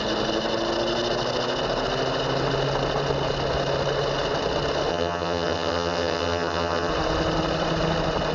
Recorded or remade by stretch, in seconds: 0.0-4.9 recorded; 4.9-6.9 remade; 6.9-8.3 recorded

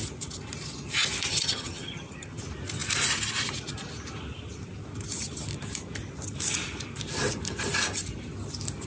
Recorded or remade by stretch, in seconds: 0.0-1.3 recorded; 1.3-2.4 remade; 2.4-8.9 recorded

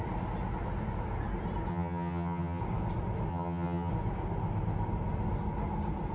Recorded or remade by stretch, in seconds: 0.0-1.7 recorded; 1.7-2.6 remade; 2.6-3.3 recorded; 3.3-3.9 remade; 3.9-6.1 recorded